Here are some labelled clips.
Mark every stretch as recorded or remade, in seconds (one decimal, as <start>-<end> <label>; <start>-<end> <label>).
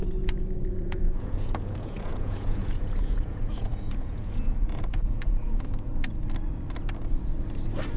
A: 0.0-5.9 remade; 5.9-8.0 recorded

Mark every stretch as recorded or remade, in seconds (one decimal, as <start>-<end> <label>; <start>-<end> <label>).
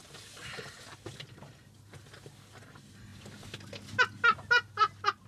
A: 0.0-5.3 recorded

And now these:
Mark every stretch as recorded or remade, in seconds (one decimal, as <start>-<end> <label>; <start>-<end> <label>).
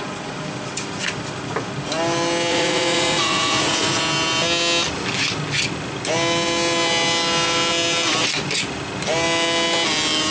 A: 0.0-2.5 recorded; 2.5-4.0 remade; 4.0-10.3 recorded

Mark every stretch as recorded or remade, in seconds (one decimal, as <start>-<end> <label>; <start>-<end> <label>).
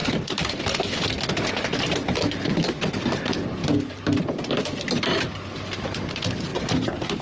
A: 0.0-7.2 recorded